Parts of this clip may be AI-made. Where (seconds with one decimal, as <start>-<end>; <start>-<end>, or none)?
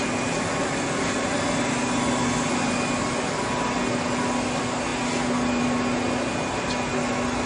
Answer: none